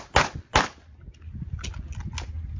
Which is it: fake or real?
real